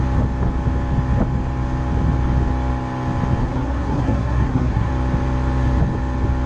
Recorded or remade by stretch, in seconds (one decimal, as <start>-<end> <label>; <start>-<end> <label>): 0.0-3.4 recorded; 3.4-4.9 remade; 4.9-6.5 recorded